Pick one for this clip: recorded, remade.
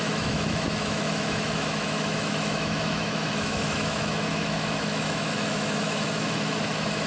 remade